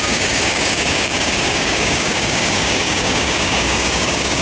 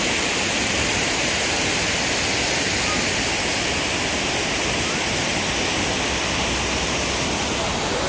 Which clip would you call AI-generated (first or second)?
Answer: first